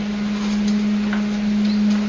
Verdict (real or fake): real